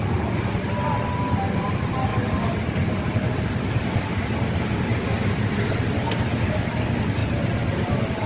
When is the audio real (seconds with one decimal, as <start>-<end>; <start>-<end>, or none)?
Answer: 0.0-8.3

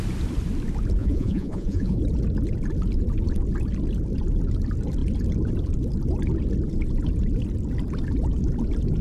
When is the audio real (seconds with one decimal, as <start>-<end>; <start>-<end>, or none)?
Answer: 0.0-1.0; 2.0-9.0

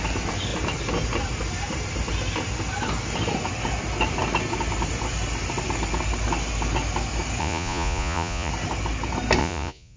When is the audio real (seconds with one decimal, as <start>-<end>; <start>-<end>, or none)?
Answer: 0.0-7.4; 8.5-9.4

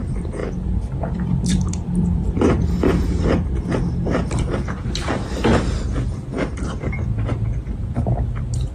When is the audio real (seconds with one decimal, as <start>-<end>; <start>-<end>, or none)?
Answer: 0.0-0.4; 3.2-8.7

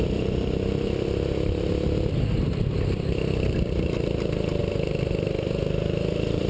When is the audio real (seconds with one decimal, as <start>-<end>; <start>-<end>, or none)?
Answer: none

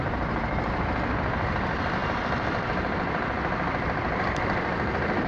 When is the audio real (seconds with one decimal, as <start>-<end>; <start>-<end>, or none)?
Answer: 0.0-2.0